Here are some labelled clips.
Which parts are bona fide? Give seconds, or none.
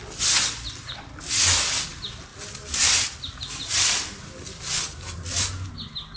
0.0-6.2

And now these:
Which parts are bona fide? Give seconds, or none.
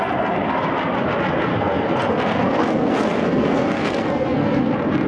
0.0-1.5; 4.6-5.1